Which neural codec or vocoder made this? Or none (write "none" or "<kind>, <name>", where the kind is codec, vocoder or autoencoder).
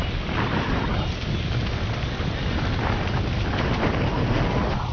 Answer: none